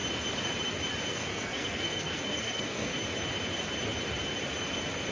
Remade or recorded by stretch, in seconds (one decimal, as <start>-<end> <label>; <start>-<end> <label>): 0.0-1.1 recorded; 1.1-2.9 remade; 2.9-5.1 recorded